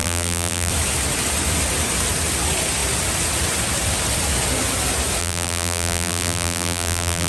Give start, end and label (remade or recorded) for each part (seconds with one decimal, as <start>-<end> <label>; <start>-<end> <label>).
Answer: 0.0-0.7 remade; 0.7-5.2 recorded; 5.2-7.3 remade